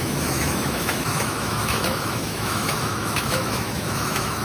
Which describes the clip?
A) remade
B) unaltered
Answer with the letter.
A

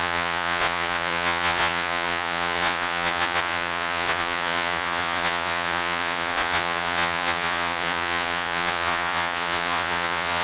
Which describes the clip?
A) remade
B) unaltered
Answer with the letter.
A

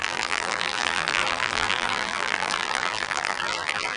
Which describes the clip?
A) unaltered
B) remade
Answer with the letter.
B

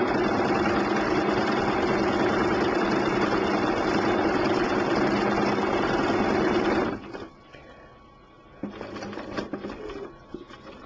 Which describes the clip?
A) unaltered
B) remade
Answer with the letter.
A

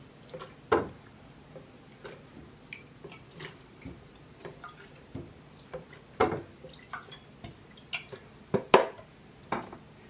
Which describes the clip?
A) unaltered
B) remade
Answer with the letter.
A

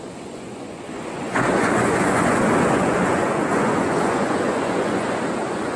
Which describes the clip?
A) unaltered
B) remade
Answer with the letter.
B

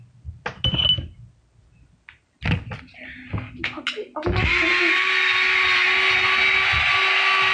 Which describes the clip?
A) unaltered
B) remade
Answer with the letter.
A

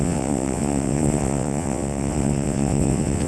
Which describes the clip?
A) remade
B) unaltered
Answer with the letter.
A